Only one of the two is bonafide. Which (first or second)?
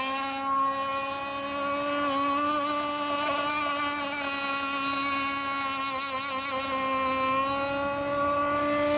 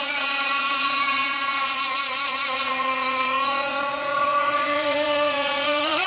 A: first